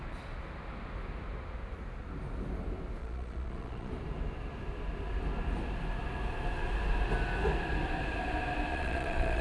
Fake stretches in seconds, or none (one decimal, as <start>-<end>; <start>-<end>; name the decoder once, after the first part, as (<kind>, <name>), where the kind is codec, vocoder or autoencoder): 3.0-3.9 (vocoder, Vocos); 8.7-9.4